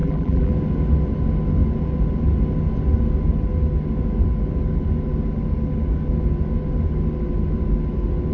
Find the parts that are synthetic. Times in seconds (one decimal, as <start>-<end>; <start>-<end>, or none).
0.0-0.5